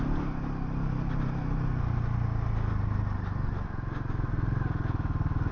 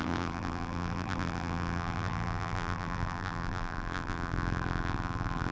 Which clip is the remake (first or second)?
second